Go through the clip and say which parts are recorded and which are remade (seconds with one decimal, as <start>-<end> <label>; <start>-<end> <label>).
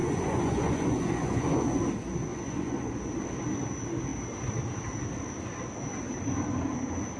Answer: 0.0-1.8 remade; 1.8-2.3 recorded; 2.3-2.9 remade; 2.9-7.2 recorded